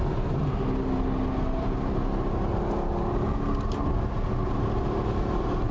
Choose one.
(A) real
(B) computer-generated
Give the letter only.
A